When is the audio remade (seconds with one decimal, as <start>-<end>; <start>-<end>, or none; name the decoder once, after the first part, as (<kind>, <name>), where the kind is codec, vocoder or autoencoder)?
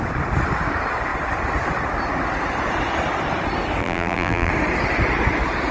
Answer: 3.8-4.5 (vocoder, BigVGAN v2)